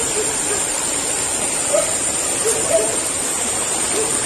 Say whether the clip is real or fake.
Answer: real